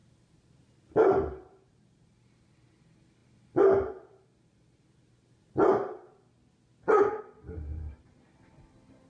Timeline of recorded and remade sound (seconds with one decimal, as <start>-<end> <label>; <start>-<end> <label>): 0.0-9.1 recorded